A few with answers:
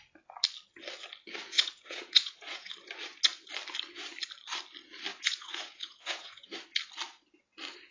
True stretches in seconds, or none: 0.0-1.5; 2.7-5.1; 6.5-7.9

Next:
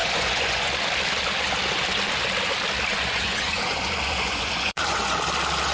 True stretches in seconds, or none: 0.7-2.9; 5.2-5.7

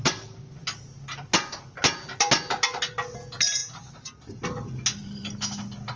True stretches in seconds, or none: 0.0-6.0